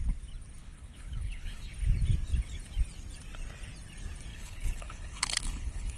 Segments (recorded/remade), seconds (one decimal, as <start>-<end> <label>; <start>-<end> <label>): 0.0-0.6 recorded; 0.6-1.7 remade; 1.7-4.3 recorded; 4.3-6.0 remade